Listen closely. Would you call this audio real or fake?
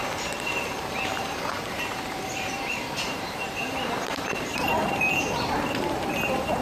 fake